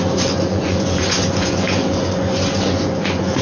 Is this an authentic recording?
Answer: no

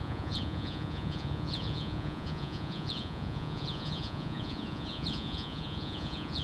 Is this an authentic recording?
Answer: no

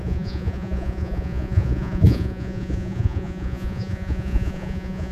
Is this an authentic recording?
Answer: no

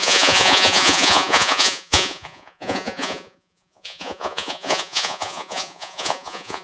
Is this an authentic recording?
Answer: no